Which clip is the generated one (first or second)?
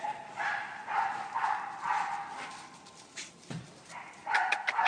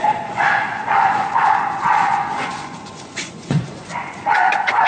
second